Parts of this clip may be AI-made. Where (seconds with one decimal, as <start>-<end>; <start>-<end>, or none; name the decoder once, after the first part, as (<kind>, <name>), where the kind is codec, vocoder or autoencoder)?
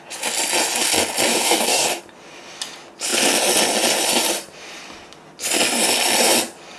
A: 1.3-2.0 (codec, DAC)